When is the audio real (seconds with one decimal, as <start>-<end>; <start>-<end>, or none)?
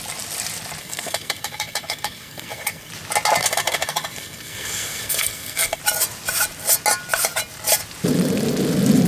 0.0-0.8; 2.9-3.4; 5.8-9.1